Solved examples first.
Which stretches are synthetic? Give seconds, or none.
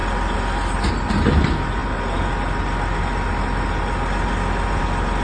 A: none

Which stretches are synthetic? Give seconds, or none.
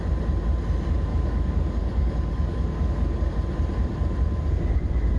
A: 1.1-3.3 (codec, DAC)